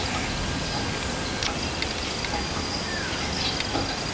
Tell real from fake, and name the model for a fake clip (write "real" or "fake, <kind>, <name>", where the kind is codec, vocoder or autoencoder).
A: real